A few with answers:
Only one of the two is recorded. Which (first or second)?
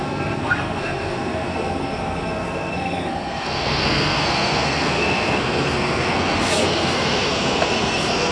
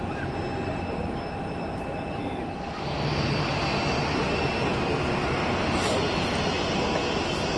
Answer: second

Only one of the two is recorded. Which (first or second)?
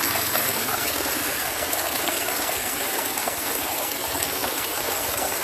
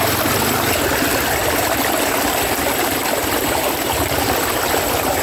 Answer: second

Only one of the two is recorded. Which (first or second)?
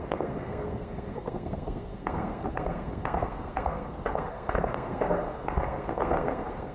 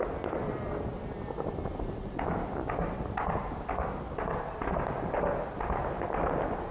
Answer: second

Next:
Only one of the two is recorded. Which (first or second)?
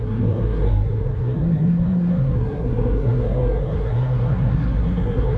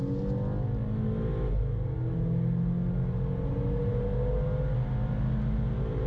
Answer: second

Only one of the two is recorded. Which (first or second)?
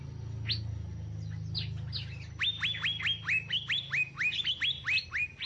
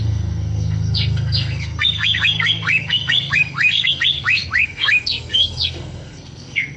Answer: first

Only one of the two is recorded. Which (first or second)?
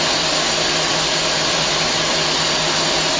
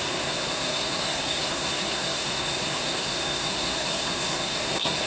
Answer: first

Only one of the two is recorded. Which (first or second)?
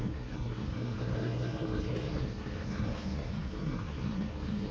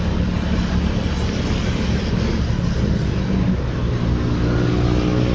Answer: second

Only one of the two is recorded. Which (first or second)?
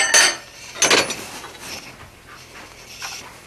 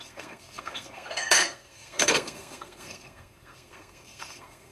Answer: first